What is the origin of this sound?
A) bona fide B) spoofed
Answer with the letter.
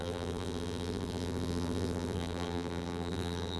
B